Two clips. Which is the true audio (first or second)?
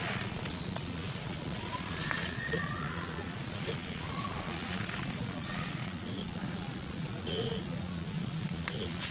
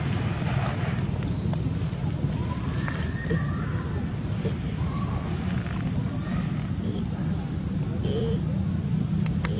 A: second